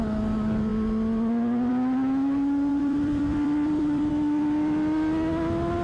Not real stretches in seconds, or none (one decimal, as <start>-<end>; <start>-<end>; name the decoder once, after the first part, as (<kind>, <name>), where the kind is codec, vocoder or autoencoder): 2.7-4.1 (vocoder, BigVGAN v2)